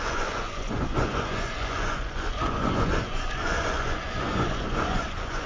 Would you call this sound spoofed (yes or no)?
yes